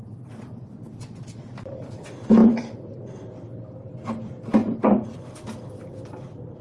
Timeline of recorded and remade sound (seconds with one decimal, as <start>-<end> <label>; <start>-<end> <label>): 0.0-2.4 recorded; 2.4-3.0 remade; 3.0-4.6 recorded; 4.6-6.6 remade